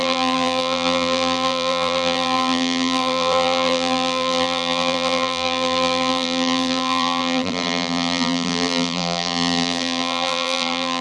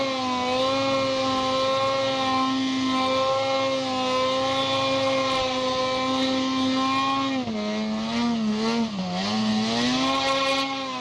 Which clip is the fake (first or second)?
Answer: first